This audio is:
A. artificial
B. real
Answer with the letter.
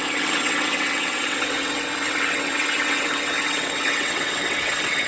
A